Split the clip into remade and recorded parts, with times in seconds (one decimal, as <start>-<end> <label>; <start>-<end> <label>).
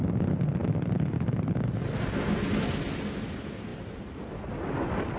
0.0-3.7 recorded; 3.7-4.3 remade; 4.3-5.2 recorded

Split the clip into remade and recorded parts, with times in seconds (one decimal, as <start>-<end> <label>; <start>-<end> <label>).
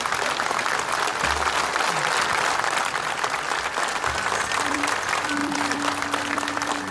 0.0-1.1 remade; 1.1-3.8 recorded; 3.8-6.9 remade